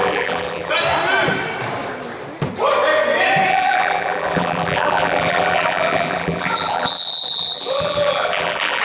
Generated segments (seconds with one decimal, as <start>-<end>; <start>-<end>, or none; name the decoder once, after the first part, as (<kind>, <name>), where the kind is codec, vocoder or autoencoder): 0.0-0.7 (vocoder, BigVGAN v2); 3.5-8.8